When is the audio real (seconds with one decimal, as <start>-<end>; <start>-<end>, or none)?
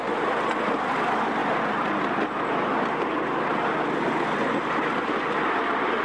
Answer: 0.0-6.0